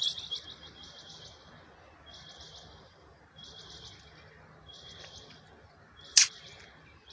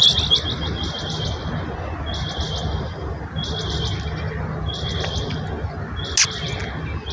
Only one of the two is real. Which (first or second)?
second